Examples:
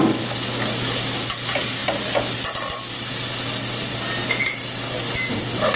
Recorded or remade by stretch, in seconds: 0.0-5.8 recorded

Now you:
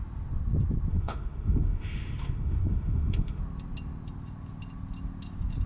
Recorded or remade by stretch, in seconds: 0.0-0.9 recorded; 0.9-3.4 remade; 3.4-5.7 recorded

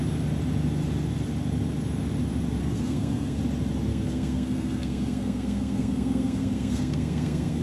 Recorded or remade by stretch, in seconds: 0.0-2.6 recorded; 2.6-3.4 remade; 3.4-3.9 recorded; 3.9-7.6 remade